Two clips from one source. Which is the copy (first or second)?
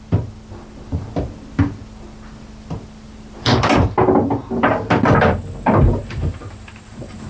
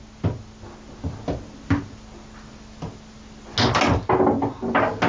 first